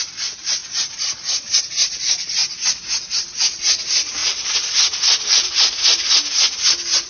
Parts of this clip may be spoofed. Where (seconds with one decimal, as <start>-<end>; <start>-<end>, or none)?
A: 0.0-0.6; 1.6-2.4; 3.1-4.2